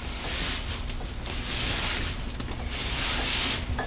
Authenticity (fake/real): real